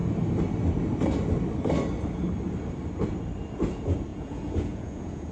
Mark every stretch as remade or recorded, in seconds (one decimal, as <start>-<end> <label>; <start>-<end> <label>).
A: 0.0-4.1 recorded; 4.1-5.3 remade